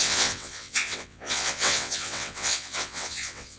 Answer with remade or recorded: remade